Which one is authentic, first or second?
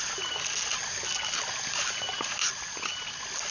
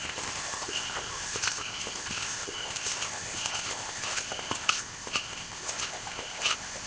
first